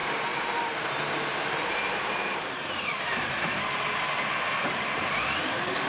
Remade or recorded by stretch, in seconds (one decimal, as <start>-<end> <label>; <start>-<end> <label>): 0.0-5.9 remade